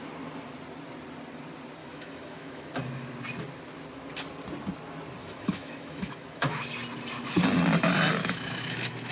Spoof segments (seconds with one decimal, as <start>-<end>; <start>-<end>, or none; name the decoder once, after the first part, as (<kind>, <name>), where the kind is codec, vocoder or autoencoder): 1.8-2.7 (autoencoder, DAC-VAE); 5.2-6.6; 8.2-9.1

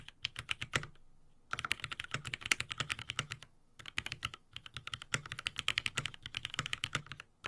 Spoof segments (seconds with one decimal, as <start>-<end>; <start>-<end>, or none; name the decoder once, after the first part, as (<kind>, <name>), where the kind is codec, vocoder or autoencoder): 2.9-7.0 (autoencoder, DAC-VAE)

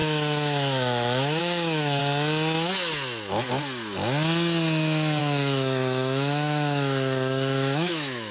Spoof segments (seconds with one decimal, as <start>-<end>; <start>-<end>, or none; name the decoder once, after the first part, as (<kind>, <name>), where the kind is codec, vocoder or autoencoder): 0.0-2.0 (autoencoder, DAC-VAE); 5.2-8.3

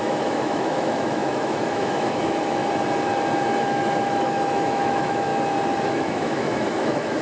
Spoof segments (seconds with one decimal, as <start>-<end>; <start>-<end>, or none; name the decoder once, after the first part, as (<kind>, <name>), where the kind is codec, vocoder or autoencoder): 0.0-2.6 (autoencoder, DAC-VAE); 3.6-5.3; 5.9-7.2

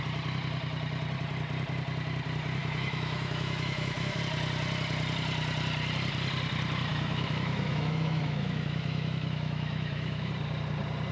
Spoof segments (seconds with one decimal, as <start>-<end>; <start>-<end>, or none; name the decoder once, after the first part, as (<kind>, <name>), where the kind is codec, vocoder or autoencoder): 2.6-4.2 (autoencoder, DAC-VAE); 6.9-10.3